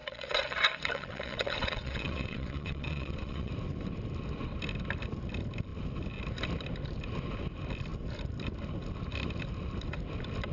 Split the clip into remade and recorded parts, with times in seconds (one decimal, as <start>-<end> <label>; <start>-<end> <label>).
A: 0.0-3.5 remade; 3.5-10.5 recorded